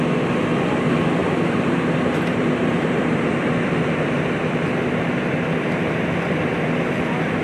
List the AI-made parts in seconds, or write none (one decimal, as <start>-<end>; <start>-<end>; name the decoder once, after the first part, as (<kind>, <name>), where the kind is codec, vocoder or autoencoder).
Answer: 1.2-3.4 (vocoder, BigVGAN v2)